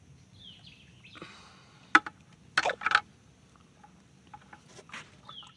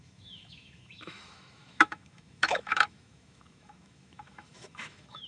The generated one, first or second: second